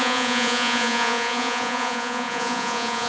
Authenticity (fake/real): fake